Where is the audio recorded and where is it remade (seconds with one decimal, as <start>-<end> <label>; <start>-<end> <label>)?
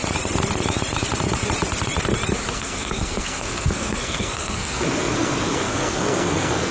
0.0-2.5 recorded; 2.5-6.7 remade